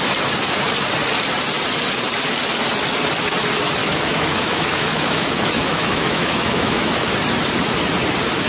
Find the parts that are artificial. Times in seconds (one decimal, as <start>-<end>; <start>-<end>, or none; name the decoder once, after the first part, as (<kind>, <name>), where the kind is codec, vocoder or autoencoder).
3.8-7.1 (autoencoder, DAC-VAE)